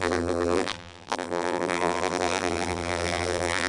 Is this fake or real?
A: fake